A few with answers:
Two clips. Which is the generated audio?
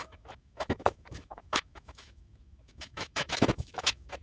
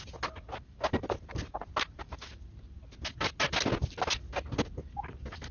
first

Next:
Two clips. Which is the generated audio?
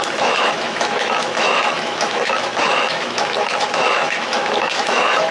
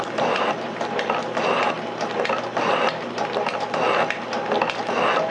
first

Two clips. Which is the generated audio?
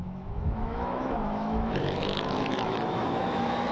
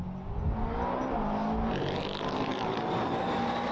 first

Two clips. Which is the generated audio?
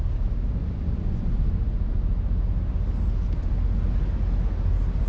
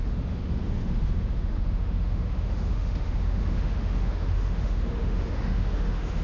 second